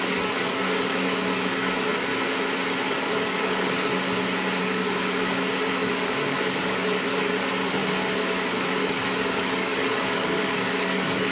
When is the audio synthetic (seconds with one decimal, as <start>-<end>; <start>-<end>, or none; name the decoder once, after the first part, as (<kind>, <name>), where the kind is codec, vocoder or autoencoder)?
0.0-2.1 (codec, DAC); 2.9-3.9; 4.6-7.8; 8.5-11.3